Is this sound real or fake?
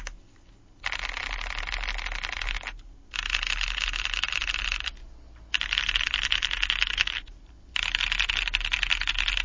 real